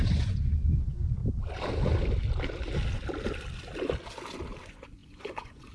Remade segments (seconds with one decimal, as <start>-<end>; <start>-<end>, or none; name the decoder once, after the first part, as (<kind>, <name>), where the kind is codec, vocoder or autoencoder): 0.0-1.2 (vocoder, Vocos); 4.6-5.7